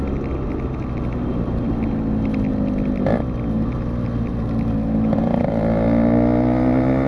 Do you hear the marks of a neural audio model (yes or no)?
no